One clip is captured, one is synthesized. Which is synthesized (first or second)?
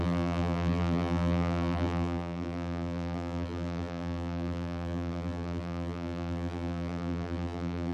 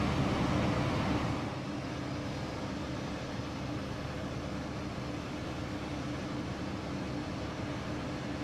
first